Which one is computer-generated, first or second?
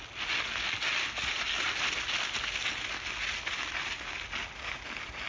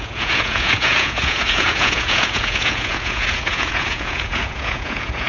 second